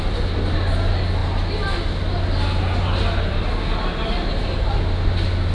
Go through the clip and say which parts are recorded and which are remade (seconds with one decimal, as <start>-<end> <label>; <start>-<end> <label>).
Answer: 0.0-5.5 recorded